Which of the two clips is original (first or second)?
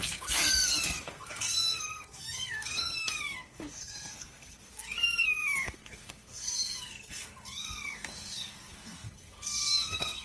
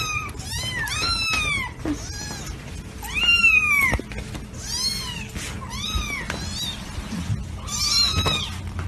second